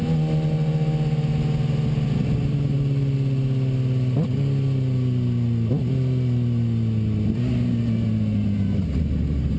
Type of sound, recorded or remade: recorded